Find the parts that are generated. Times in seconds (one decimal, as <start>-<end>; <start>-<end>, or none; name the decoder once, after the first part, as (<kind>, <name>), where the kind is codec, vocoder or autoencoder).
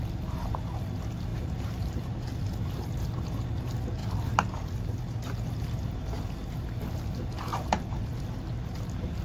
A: 1.3-2.2 (vocoder, BigVGAN v2)